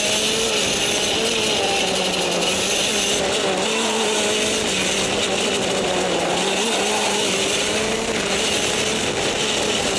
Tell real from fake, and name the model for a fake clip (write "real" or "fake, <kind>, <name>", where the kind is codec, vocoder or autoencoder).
real